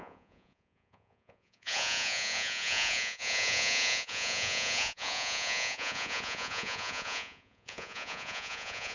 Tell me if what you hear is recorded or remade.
remade